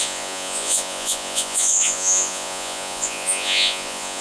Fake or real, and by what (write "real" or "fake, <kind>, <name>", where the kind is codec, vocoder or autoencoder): fake, vocoder, Vocos